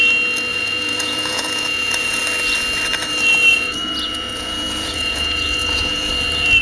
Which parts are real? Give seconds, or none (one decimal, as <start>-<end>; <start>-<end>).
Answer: 0.0-0.5; 2.2-3.5; 6.1-6.6